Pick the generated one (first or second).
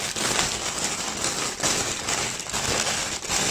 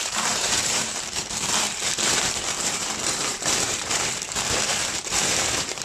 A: second